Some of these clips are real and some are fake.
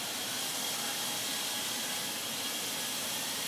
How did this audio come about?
real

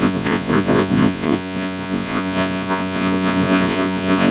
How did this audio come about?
fake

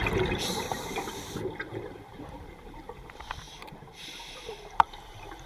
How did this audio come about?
fake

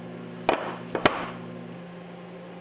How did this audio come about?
real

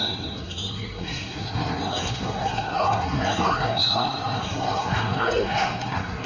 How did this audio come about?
fake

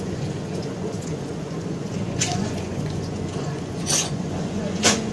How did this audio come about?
fake